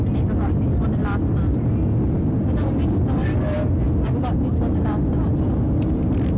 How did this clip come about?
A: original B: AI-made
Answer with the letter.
A